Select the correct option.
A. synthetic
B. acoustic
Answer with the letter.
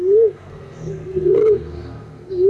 A